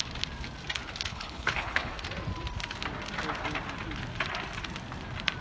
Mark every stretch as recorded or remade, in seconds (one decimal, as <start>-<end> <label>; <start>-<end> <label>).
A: 0.0-1.1 recorded; 1.1-1.9 remade; 1.9-5.4 recorded